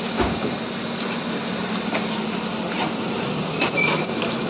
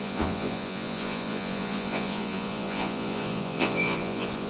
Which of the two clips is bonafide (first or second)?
first